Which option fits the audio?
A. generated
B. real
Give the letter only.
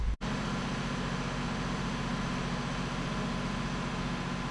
B